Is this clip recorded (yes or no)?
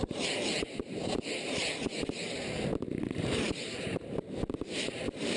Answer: no